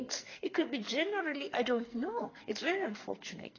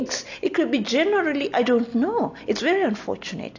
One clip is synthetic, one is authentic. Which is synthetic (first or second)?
first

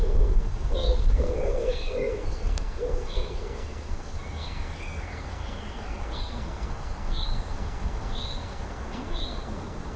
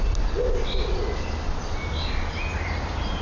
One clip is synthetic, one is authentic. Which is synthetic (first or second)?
first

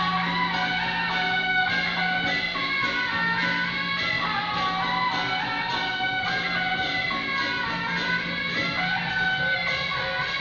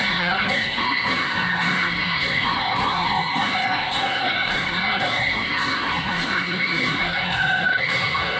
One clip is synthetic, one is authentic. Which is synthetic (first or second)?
second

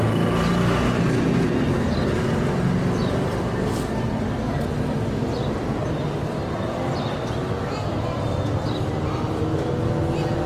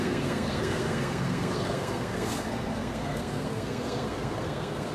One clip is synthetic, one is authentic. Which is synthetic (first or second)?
second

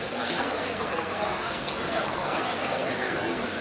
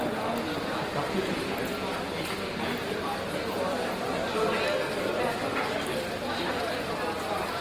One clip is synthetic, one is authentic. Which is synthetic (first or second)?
first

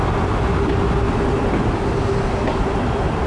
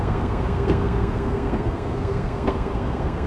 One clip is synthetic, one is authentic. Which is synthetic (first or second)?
second